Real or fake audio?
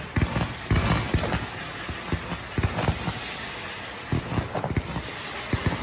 real